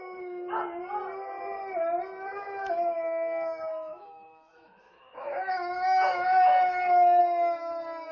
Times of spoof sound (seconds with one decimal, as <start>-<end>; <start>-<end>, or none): 2.3-7.2